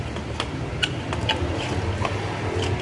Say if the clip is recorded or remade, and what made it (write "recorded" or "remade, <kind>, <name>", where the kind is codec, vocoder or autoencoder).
recorded